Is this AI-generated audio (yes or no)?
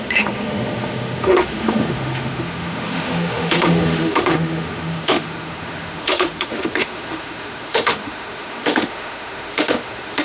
yes